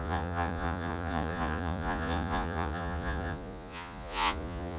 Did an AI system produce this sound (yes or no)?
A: yes